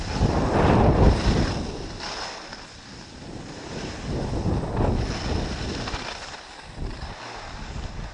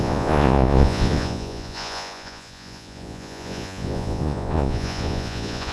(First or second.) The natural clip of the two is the first